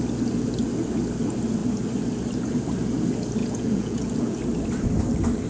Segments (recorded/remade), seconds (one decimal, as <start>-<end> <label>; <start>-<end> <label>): 0.0-3.4 recorded; 3.4-4.4 remade; 4.4-5.5 recorded

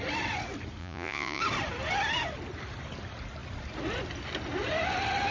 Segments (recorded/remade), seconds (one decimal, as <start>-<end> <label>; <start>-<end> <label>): 0.0-0.8 recorded; 0.8-1.4 remade; 1.4-5.3 recorded

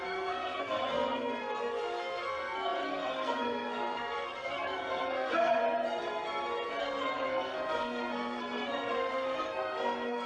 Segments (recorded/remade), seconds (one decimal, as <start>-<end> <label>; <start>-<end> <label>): 0.0-5.6 remade; 5.6-6.8 recorded; 6.8-10.3 remade

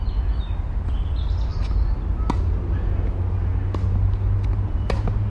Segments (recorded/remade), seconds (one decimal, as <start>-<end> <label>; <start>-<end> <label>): 0.0-5.3 recorded

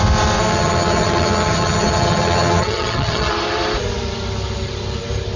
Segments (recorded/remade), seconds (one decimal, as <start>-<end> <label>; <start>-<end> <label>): 0.0-0.5 recorded; 0.5-3.3 remade; 3.3-5.4 recorded

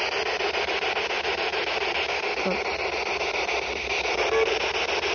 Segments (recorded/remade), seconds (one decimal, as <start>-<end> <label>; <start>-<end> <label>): 0.0-5.1 recorded